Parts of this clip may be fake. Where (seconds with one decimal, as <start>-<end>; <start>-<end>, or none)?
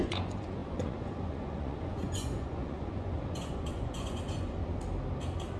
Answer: 0.0-4.6